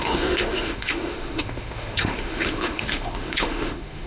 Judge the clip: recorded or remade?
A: remade